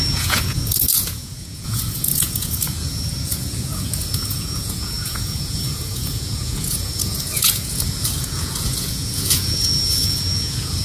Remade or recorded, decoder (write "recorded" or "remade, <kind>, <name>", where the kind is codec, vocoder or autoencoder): remade, vocoder, Vocos